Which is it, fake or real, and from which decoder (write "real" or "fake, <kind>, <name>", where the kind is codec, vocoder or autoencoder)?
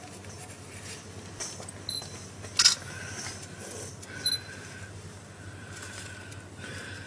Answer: real